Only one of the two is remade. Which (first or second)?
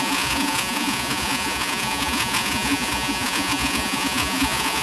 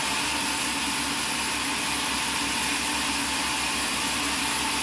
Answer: first